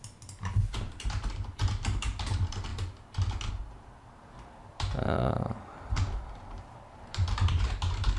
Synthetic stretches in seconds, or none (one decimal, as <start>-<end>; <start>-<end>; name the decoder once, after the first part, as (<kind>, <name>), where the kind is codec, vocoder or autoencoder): 0.0-2.7 (vocoder, BigVGAN v2); 3.5-8.2